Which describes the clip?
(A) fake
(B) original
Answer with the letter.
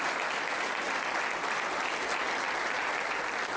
B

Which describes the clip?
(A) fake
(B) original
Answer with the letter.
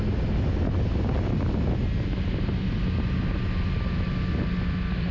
B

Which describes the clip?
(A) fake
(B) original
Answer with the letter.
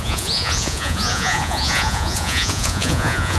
A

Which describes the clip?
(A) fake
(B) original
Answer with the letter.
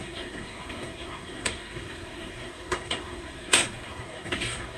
A